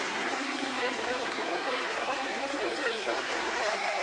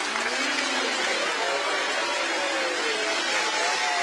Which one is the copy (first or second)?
first